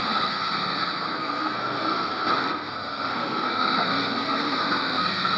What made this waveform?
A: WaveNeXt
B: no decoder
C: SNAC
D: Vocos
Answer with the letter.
C